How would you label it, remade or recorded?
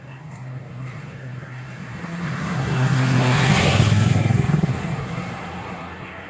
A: remade